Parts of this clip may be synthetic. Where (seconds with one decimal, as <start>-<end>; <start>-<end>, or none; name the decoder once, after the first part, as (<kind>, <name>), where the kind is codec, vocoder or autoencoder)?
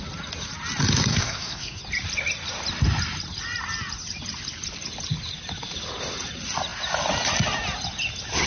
1.1-1.8 (codec, SNAC)